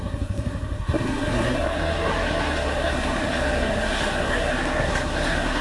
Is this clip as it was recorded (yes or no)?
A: no